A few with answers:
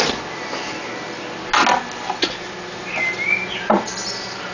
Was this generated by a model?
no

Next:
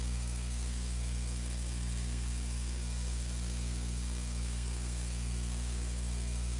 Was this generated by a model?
yes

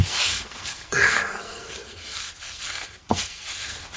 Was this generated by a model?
yes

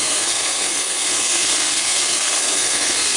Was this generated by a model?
yes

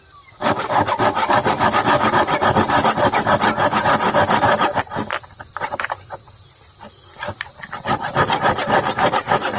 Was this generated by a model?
no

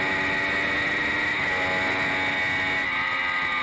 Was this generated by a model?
no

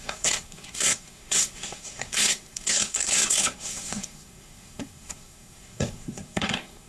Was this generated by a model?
yes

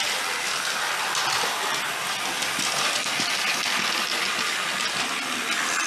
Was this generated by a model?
no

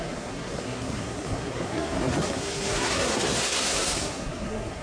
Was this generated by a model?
yes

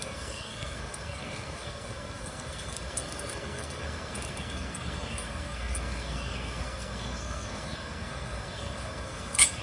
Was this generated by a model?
yes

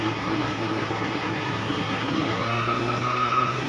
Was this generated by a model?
yes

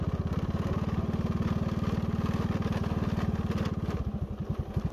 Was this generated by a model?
no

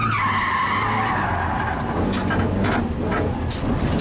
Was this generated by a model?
no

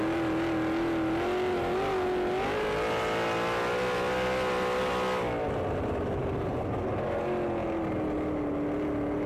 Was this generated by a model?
no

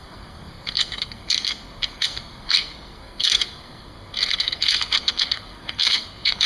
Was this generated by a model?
yes